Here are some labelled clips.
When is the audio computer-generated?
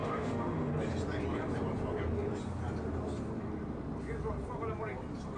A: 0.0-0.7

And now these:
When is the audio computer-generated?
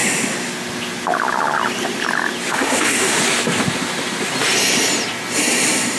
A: 2.5-3.2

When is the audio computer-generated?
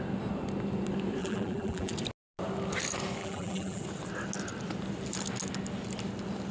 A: 1.2-1.9; 3.2-3.8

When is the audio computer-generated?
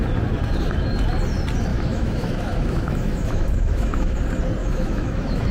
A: 1.7-4.1; 4.6-5.5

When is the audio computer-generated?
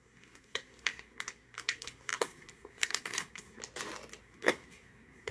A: 0.0-3.6; 4.2-5.3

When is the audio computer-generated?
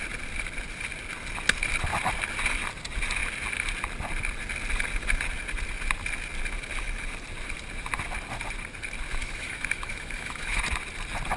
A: 9.2-10.6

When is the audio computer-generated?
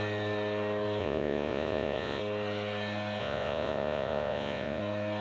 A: 1.0-2.2; 3.2-4.8